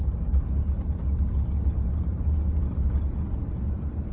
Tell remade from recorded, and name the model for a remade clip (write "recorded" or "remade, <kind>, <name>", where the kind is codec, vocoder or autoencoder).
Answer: recorded